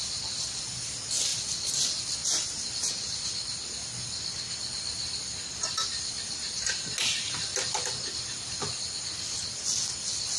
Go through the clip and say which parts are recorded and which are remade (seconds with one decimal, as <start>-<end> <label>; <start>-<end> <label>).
0.0-10.4 recorded